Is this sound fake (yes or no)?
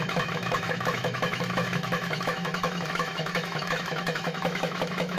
yes